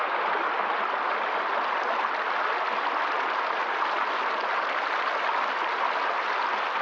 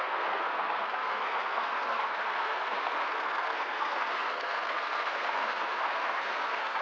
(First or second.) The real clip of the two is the first